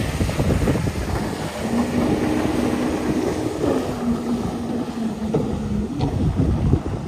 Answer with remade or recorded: recorded